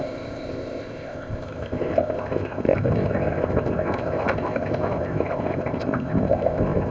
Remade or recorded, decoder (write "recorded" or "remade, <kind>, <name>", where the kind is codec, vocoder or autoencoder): remade, codec, ZipCodec